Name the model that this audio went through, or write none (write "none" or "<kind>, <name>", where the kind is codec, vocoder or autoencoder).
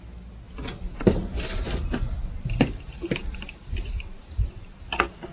none